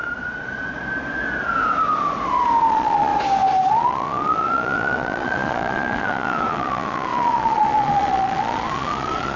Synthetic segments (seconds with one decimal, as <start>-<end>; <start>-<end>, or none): 2.7-3.1; 3.7-9.4

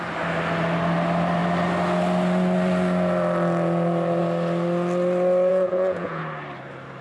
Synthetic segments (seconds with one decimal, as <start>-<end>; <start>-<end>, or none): 5.5-6.2

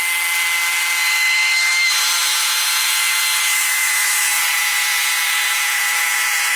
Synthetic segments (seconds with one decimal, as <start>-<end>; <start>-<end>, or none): 2.2-6.6

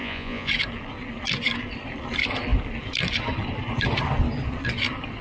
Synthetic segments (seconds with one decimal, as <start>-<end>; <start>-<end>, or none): 0.0-0.5

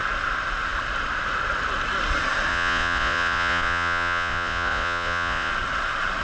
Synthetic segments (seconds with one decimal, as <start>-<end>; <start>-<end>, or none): 2.5-5.5